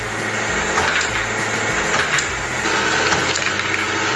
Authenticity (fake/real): real